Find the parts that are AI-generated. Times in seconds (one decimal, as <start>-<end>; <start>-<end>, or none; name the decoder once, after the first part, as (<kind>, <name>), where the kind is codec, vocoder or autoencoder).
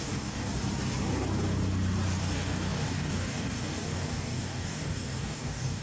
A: 0.0-0.5 (codec, DAC); 2.2-5.8